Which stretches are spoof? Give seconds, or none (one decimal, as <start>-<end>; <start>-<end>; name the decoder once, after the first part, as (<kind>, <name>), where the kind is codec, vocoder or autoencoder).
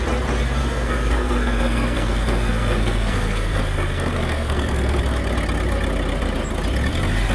0.6-5.0 (codec, SNAC)